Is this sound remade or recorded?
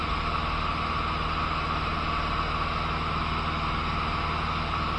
recorded